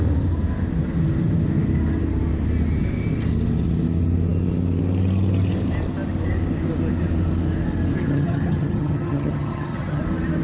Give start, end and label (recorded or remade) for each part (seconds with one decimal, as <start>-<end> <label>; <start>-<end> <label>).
0.0-8.0 recorded; 8.0-10.0 remade; 10.0-10.4 recorded